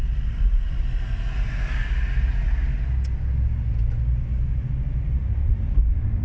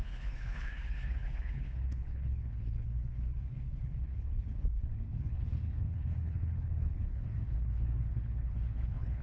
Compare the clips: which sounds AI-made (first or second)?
second